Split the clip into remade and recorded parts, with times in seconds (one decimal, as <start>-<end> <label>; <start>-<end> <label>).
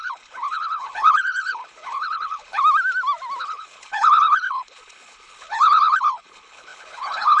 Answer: 0.0-2.6 remade; 2.6-3.4 recorded; 3.4-7.4 remade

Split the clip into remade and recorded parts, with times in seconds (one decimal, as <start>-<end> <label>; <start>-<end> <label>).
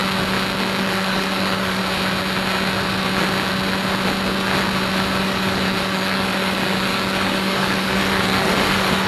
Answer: 0.0-0.8 recorded; 0.8-1.8 remade; 1.8-5.2 recorded; 5.2-9.1 remade